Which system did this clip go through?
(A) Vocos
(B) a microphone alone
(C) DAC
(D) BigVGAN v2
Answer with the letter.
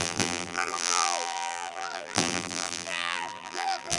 D